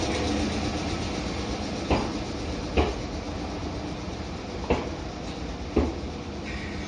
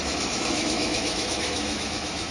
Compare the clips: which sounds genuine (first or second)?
first